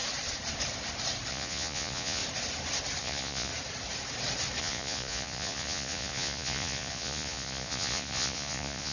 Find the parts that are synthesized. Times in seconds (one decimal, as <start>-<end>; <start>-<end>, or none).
1.3-2.2; 3.0-3.5; 4.6-8.9